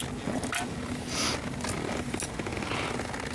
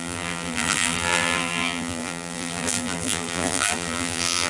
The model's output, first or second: second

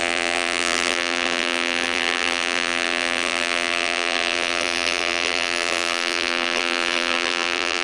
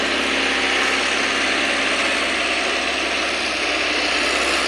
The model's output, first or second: first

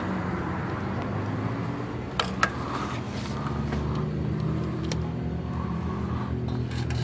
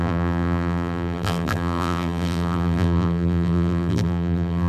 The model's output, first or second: second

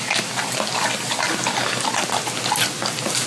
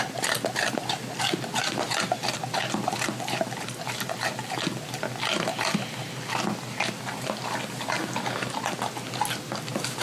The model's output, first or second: first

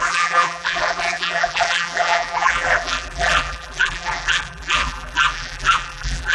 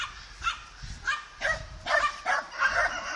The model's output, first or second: first